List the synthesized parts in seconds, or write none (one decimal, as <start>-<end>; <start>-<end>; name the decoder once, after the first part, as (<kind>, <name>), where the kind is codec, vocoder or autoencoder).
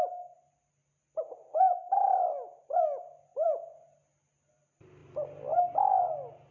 none